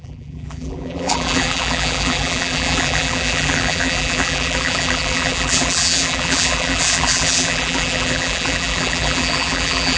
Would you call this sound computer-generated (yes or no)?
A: yes